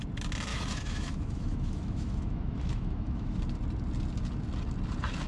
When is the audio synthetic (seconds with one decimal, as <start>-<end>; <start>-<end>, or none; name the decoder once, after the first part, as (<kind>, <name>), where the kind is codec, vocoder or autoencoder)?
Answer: 0.5-3.4 (autoencoder, DAC-VAE)